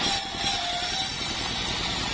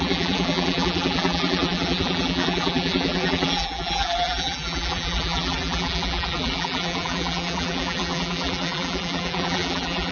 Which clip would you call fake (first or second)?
second